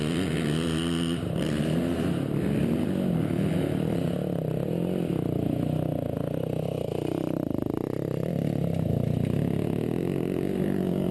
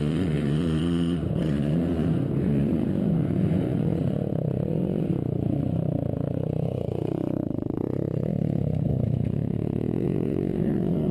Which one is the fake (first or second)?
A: second